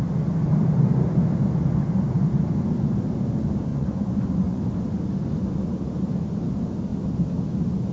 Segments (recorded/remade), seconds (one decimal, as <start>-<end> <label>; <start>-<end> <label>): 0.0-3.7 recorded; 3.7-4.6 remade; 4.6-7.9 recorded